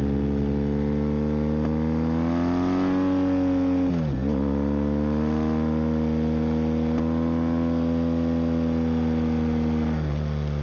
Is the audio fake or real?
real